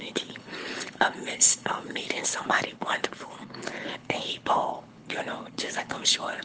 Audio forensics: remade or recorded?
remade